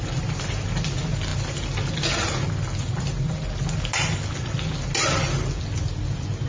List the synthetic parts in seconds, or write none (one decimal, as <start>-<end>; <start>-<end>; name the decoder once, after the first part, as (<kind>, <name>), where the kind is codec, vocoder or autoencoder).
none